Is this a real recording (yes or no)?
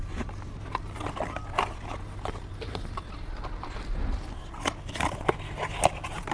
yes